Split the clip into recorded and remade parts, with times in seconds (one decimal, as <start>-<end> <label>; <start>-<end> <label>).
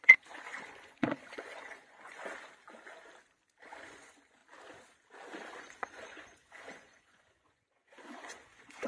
0.0-2.2 remade; 2.2-3.6 recorded; 3.6-4.4 remade; 4.4-5.6 recorded; 5.6-8.9 remade